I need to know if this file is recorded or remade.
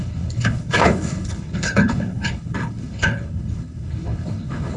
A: remade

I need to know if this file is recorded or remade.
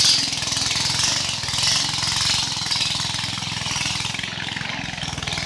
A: recorded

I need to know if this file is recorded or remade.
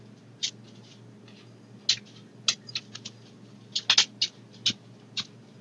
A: recorded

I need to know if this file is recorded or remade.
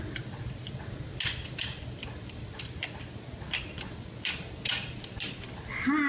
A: recorded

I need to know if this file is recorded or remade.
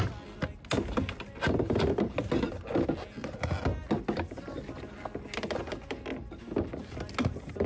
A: recorded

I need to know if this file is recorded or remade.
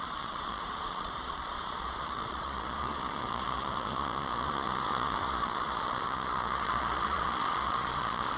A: remade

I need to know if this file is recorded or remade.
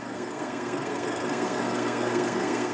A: remade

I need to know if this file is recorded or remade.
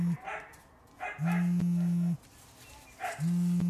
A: recorded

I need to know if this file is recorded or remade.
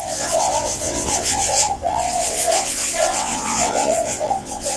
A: remade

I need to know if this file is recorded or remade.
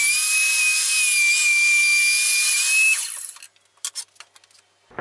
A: recorded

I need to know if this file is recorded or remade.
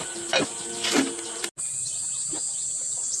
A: recorded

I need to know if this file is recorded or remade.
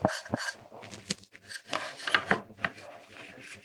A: recorded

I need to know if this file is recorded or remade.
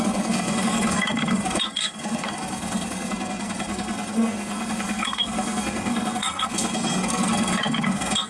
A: remade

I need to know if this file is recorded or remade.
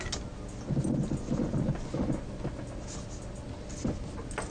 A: recorded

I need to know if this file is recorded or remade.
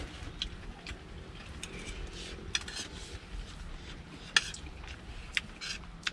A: recorded